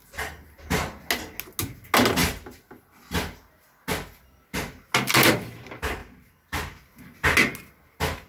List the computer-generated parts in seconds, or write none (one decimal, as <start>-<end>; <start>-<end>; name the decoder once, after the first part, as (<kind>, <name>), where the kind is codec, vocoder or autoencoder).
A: none